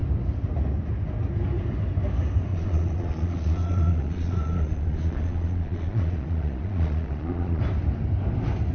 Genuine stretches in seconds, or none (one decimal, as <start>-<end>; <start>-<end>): 0.0-2.5; 7.6-8.7